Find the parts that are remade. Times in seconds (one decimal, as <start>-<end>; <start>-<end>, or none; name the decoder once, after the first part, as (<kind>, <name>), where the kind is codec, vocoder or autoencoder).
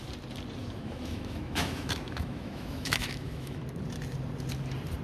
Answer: 0.6-3.6 (autoencoder, DAC-VAE)